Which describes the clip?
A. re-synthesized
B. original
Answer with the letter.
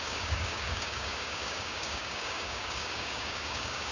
A